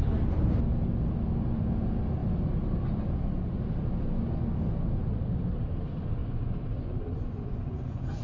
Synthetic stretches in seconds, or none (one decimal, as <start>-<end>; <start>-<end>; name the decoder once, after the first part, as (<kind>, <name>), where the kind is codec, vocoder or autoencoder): 6.2-8.2 (vocoder, Vocos)